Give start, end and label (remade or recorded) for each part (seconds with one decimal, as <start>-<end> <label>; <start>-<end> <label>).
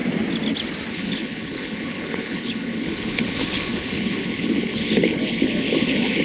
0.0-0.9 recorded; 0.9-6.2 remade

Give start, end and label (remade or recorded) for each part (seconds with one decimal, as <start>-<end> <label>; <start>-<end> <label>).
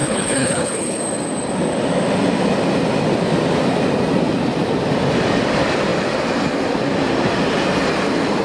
0.0-1.0 remade; 1.0-8.4 recorded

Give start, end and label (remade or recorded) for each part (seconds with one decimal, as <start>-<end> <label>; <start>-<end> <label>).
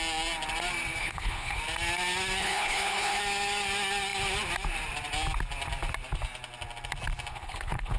0.0-1.0 recorded; 1.0-1.6 remade; 1.6-2.4 recorded; 2.4-3.2 remade; 3.2-7.3 recorded; 7.3-8.0 remade